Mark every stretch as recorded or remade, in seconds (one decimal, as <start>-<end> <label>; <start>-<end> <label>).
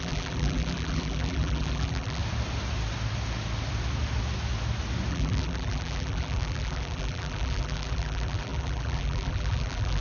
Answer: 0.0-2.2 remade; 2.2-5.1 recorded; 5.1-10.0 remade